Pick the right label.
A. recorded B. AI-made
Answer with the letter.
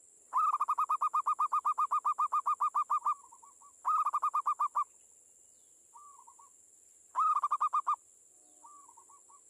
A